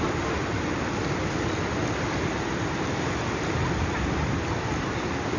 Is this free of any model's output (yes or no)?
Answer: yes